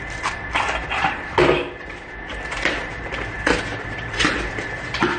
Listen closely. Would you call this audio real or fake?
real